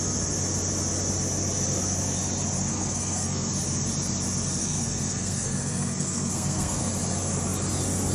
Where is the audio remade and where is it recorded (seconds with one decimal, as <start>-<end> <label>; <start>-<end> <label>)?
0.0-2.7 recorded; 2.7-3.5 remade; 3.5-4.6 recorded; 4.6-6.8 remade; 6.8-8.1 recorded